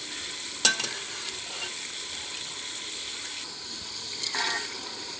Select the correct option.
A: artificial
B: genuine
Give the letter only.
B